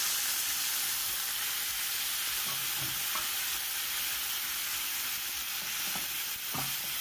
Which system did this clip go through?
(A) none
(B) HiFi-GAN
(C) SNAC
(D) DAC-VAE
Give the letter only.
A